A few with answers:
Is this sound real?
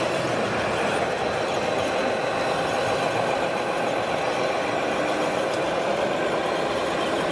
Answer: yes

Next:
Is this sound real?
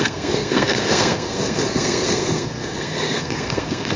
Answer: no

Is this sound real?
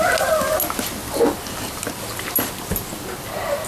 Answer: yes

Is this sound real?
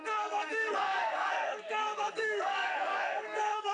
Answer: no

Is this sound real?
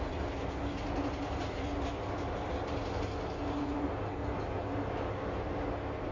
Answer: yes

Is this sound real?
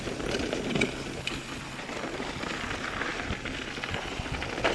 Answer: yes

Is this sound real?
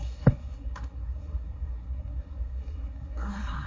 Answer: no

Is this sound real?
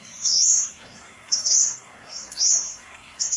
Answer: no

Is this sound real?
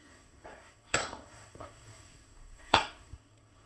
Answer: no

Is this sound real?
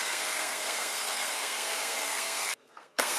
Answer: no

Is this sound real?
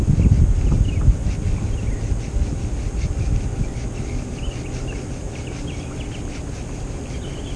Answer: yes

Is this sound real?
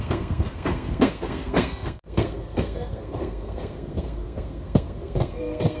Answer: no